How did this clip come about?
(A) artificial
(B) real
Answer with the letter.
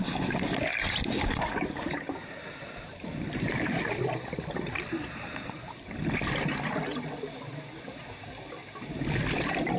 B